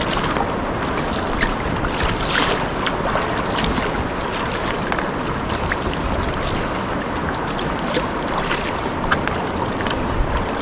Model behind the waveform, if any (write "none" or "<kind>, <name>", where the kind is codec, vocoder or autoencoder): none